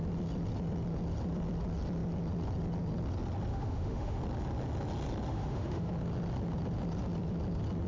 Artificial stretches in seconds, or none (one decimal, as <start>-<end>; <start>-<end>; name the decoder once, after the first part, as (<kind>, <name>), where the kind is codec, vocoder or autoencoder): 3.5-4.2 (autoencoder, DAC-VAE); 5.3-5.9